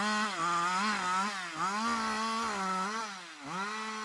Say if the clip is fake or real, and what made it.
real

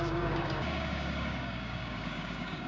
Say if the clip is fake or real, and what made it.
fake, codec, DAC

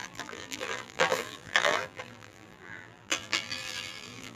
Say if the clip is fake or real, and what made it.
fake, vocoder, BigVGAN v2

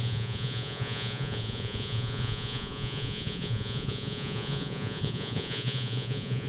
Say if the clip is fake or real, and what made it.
fake, vocoder, Vocos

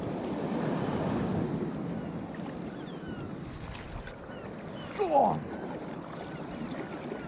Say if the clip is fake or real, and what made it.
real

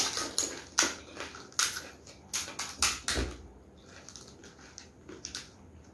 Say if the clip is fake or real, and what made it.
real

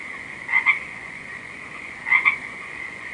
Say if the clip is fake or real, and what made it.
fake, vocoder, Vocos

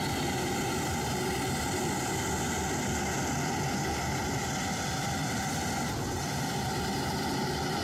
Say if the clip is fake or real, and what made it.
real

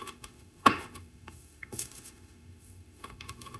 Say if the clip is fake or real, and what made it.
fake, autoencoder, DAC-VAE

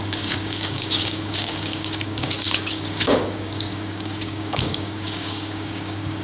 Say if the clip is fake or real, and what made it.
fake, codec, DAC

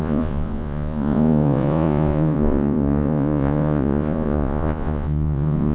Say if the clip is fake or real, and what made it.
fake, vocoder, Vocos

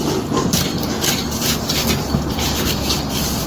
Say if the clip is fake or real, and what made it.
real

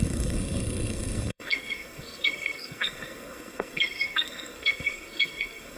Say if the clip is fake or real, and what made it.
fake, codec, SNAC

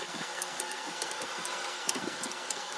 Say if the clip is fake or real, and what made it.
fake, codec, SNAC